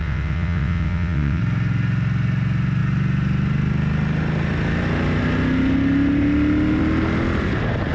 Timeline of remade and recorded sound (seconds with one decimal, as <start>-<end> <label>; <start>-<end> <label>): 0.0-1.4 remade; 1.4-7.9 recorded